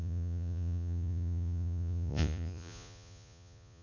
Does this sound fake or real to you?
fake